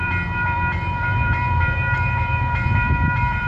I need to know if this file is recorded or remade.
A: remade